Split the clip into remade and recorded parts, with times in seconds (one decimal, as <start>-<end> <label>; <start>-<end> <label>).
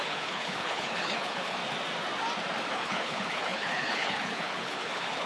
0.0-1.6 remade; 1.6-2.7 recorded; 2.7-5.3 remade